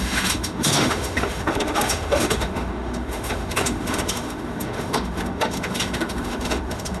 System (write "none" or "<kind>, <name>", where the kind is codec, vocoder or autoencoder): autoencoder, DAC-VAE